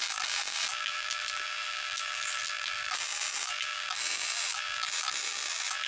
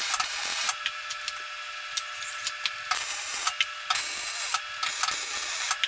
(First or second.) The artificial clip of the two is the first